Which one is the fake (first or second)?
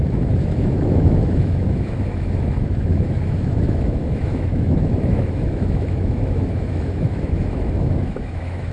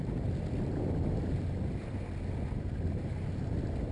first